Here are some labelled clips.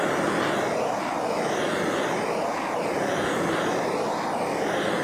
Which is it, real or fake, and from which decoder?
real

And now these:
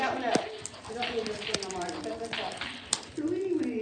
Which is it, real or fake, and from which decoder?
real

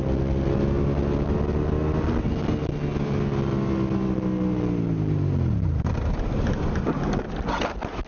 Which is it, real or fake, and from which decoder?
real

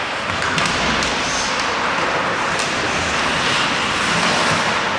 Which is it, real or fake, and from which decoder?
real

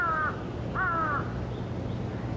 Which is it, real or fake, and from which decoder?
real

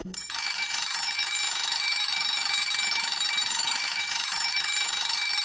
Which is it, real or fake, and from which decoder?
fake, autoencoder, DAC-VAE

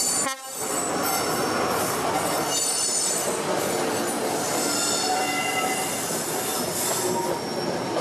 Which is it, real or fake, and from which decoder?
real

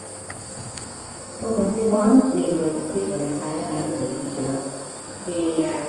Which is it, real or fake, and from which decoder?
fake, codec, SNAC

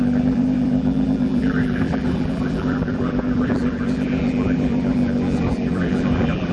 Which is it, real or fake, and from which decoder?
fake, vocoder, BigVGAN v2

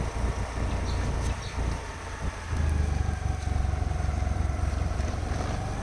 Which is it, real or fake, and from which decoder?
real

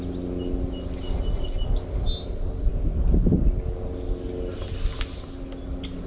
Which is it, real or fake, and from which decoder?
real